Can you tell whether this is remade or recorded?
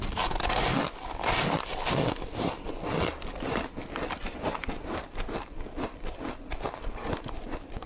recorded